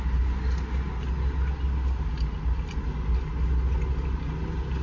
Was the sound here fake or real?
real